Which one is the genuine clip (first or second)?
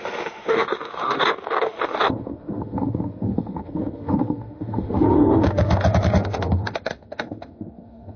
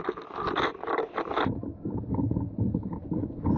second